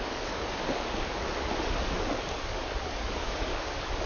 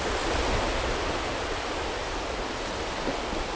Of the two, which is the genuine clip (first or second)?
second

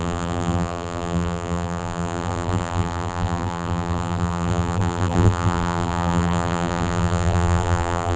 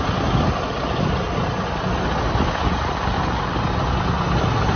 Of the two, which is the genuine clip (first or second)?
second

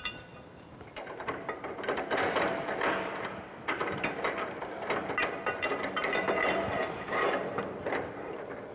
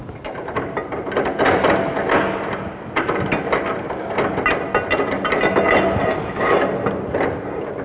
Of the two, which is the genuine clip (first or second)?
second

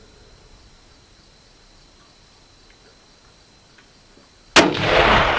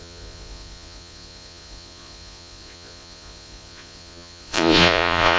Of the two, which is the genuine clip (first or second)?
first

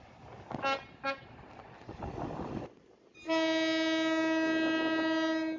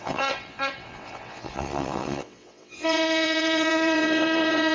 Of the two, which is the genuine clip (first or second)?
first